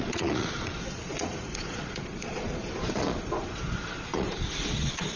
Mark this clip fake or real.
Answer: fake